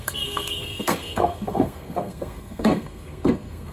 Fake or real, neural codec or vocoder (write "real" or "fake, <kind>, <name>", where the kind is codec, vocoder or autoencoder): fake, codec, SNAC